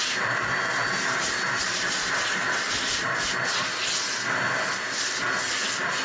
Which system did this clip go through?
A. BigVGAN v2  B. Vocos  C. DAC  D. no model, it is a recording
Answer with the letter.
D